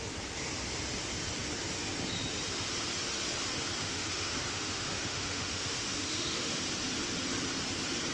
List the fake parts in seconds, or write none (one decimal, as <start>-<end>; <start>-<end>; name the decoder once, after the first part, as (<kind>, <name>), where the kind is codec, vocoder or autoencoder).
3.8-6.6 (autoencoder, DAC-VAE)